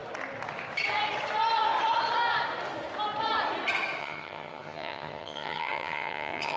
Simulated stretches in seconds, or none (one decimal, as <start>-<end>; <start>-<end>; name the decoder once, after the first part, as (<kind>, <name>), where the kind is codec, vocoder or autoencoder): 4.0-6.6 (vocoder, HiFi-GAN)